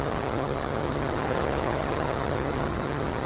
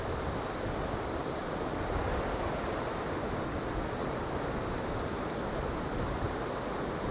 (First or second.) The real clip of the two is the second